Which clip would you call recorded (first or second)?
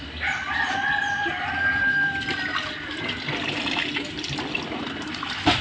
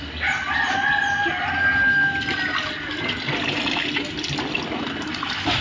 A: second